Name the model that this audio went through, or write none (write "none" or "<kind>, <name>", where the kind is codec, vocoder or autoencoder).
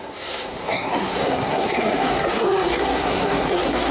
codec, SNAC